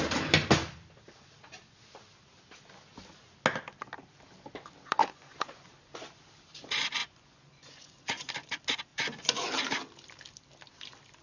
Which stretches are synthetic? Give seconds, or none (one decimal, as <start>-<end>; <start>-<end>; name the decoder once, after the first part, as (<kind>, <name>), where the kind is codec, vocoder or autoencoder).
5.0-5.7 (vocoder, Vocos); 7.0-8.3; 8.9-9.5